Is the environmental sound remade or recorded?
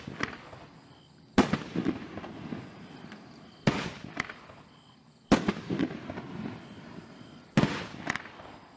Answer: recorded